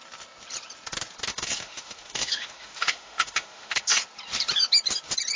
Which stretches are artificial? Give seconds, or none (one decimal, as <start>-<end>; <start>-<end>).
1.3-4.0